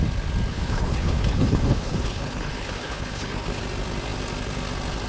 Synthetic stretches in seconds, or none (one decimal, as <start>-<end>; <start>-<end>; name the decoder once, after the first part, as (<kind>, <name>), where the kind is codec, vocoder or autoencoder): 0.5-3.6 (codec, HILCodec)